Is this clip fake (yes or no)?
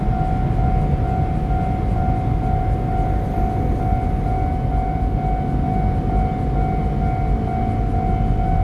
no